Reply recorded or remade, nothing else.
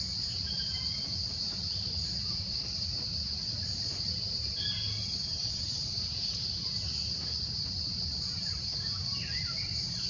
remade